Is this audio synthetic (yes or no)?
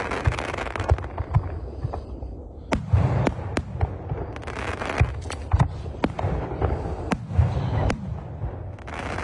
no